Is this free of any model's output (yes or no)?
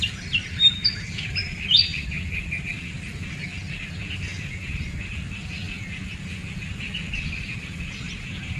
no